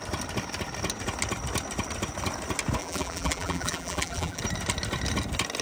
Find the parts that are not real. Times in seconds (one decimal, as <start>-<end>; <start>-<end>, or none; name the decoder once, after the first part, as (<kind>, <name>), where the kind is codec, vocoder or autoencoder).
2.8-4.4 (vocoder, BigVGAN v2)